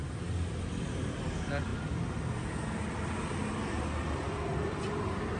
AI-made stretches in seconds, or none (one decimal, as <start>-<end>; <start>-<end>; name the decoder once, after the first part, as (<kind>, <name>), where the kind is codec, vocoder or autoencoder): none